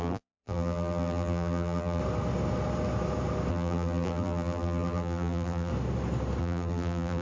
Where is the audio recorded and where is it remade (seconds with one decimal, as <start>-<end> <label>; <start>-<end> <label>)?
0.0-2.0 remade; 2.0-3.5 recorded; 3.5-5.7 remade; 5.7-6.4 recorded; 6.4-7.2 remade